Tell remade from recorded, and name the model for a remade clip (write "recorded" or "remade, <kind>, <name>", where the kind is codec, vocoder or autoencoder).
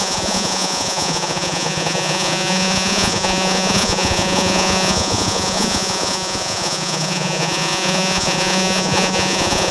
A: remade, vocoder, Vocos